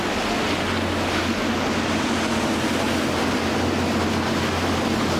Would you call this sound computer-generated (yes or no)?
no